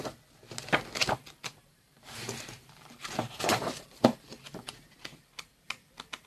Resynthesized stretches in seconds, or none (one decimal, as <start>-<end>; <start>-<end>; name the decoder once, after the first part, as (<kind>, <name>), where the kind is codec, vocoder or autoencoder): 1.0-4.7 (vocoder, BigVGAN v2)